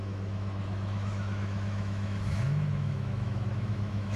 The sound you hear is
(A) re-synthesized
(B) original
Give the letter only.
A